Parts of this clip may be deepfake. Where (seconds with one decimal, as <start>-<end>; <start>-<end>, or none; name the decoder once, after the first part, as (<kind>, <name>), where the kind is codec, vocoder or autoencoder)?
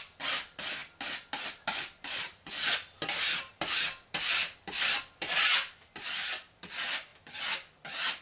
none